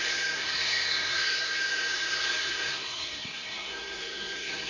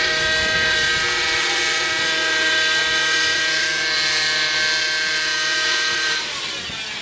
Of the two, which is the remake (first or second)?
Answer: first